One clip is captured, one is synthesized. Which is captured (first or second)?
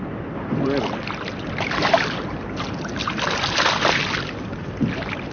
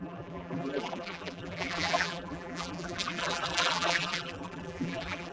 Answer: first